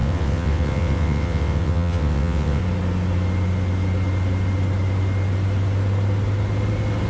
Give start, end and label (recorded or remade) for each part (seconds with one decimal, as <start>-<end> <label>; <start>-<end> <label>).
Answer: 0.0-2.6 remade; 2.6-7.1 recorded